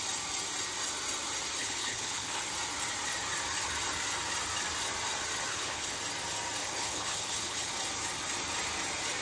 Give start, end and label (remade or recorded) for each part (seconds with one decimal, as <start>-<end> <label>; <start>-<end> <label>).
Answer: 0.0-1.6 recorded; 1.6-2.4 remade; 2.4-5.5 recorded; 5.5-6.0 remade; 6.0-6.6 recorded; 6.6-7.7 remade; 7.7-9.2 recorded